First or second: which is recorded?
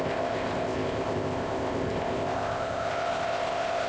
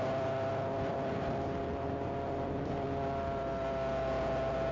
second